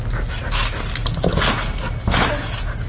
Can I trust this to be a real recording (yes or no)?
yes